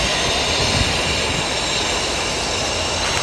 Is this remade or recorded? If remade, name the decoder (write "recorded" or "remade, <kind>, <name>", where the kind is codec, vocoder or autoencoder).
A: recorded